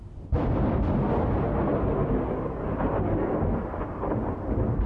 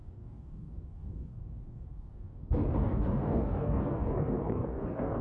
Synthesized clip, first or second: second